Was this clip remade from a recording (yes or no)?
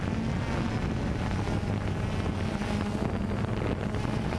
no